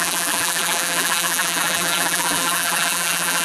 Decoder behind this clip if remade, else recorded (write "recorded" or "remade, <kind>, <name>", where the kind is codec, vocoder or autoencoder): remade, vocoder, BigVGAN v2